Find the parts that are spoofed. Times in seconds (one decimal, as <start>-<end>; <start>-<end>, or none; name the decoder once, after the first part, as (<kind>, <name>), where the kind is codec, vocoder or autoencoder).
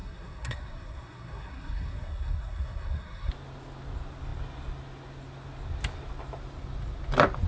0.0-3.3 (codec, SNAC)